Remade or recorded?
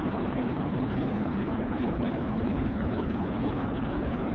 remade